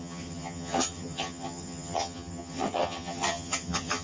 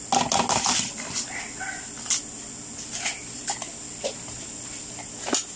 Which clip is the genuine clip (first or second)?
second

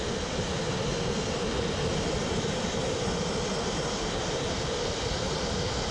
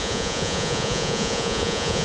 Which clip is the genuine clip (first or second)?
first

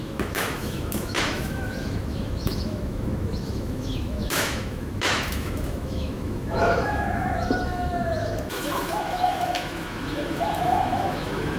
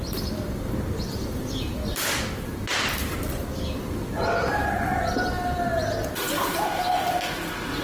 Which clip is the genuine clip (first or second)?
second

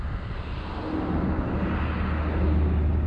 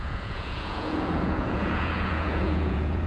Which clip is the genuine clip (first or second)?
first